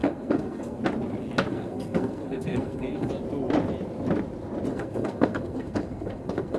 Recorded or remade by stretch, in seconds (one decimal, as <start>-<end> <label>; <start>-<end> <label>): 0.0-0.8 remade; 0.8-1.5 recorded; 1.5-3.1 remade; 3.1-4.7 recorded; 4.7-6.6 remade